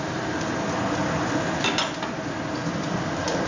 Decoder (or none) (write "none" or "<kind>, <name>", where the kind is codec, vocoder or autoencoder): none